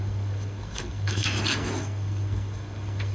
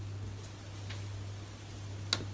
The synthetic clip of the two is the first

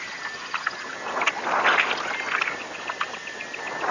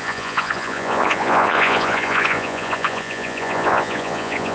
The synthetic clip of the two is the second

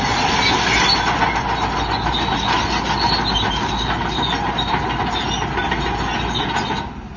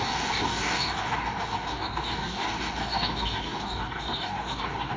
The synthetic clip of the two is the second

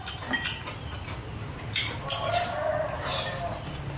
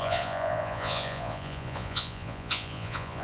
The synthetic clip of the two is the second